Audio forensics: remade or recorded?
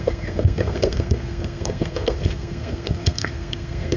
remade